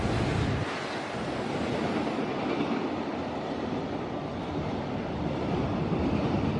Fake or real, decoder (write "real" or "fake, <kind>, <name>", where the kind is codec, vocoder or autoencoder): fake, vocoder, BigVGAN v2